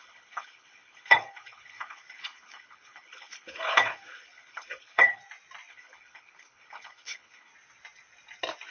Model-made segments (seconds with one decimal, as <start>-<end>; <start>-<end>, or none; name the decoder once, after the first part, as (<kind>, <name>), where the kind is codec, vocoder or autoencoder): 0.0-5.2 (codec, HILCodec); 5.7-7.5